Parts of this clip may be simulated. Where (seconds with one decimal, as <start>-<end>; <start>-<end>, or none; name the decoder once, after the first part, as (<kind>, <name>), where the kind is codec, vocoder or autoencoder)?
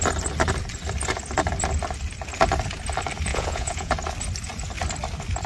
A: 3.3-3.9 (vocoder, Vocos)